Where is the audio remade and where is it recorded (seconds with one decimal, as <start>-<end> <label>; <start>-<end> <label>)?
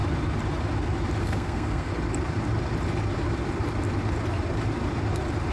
0.0-1.2 recorded; 1.2-1.9 remade; 1.9-5.5 recorded